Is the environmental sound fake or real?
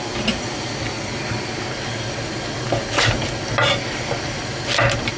real